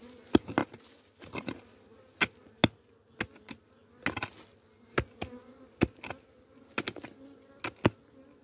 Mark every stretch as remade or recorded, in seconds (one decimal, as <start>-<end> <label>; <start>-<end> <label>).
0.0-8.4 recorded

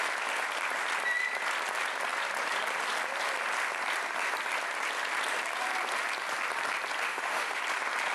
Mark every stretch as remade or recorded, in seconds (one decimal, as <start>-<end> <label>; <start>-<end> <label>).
0.0-7.1 recorded; 7.1-7.6 remade; 7.6-8.1 recorded

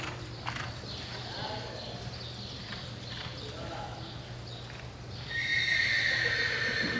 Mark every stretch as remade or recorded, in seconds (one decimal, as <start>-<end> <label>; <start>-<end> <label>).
0.0-7.0 recorded

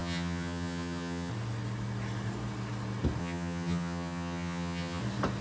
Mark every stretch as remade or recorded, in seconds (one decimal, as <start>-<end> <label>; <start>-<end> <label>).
0.0-1.3 remade; 1.3-3.2 recorded; 3.2-5.0 remade; 5.0-5.4 recorded

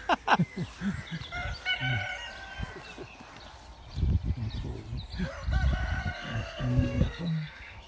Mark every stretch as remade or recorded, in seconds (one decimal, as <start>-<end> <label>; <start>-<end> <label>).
0.0-6.0 recorded; 6.0-7.9 remade